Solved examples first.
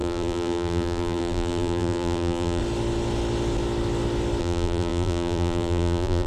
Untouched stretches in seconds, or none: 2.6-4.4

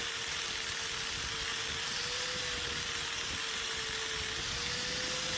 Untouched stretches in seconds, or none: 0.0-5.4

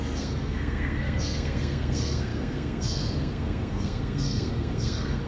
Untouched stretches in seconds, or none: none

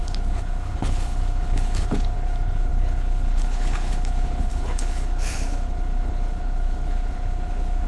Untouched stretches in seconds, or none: none

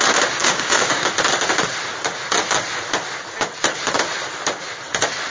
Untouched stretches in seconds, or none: 0.0-0.4; 1.1-5.3

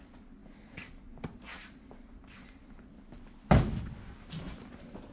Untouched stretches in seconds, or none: 0.0-5.1

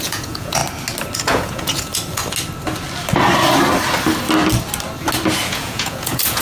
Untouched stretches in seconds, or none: 0.6-1.2; 1.9-5.5

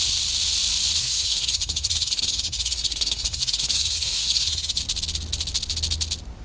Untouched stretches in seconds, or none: 0.0-1.0; 4.8-6.4